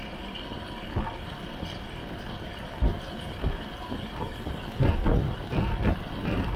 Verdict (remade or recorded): recorded